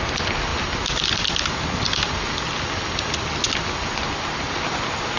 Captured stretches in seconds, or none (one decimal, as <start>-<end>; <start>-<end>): 0.0-5.2